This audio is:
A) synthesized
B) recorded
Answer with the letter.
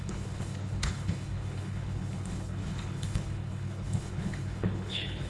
A